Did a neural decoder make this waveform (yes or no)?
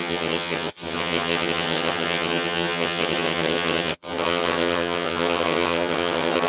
yes